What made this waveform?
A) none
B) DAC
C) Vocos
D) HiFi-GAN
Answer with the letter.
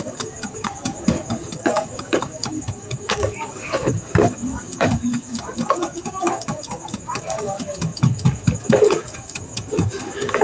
B